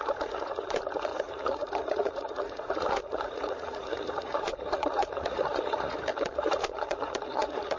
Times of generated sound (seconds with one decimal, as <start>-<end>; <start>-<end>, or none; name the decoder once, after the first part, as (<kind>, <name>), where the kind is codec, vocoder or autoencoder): 0.0-7.8 (vocoder, Vocos)